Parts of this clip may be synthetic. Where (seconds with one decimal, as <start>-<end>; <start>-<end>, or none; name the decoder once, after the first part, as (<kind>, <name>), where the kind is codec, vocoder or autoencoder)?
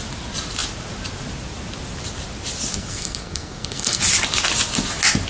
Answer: 2.7-4.0 (codec, SNAC)